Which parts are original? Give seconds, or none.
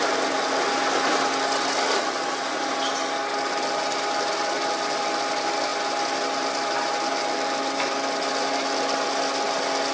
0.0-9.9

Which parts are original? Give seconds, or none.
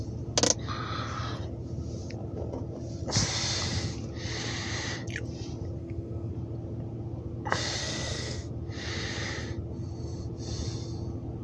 0.0-5.8; 6.3-7.8; 8.5-11.4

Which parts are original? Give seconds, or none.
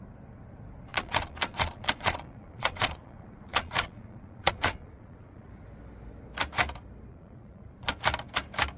0.0-0.9; 5.5-7.1; 7.9-8.8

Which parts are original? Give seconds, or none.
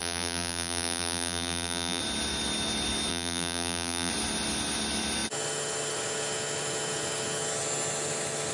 2.0-3.1; 4.1-8.5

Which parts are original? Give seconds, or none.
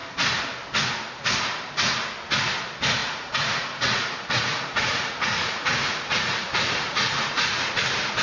0.0-3.0; 7.7-8.2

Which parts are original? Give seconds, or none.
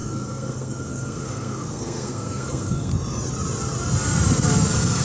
2.9-5.0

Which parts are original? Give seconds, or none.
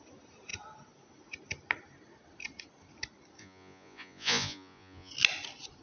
0.0-3.4; 5.1-5.8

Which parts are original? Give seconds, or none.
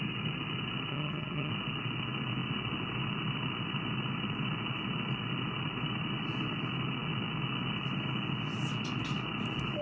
0.0-0.9; 1.5-9.8